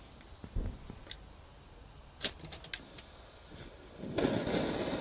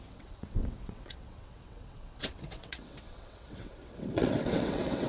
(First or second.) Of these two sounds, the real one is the first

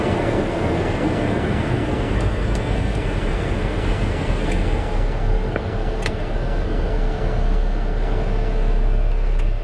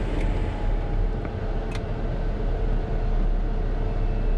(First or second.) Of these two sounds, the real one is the second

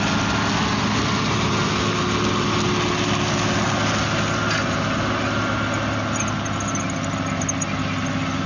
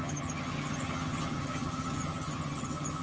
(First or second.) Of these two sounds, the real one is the first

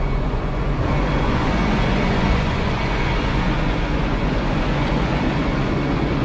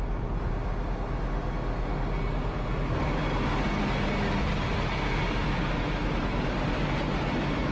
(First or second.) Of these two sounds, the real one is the second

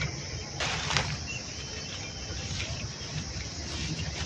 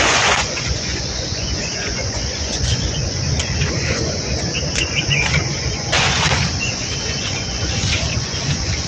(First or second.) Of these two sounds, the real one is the first